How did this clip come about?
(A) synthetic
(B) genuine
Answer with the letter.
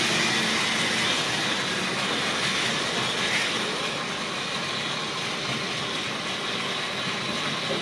B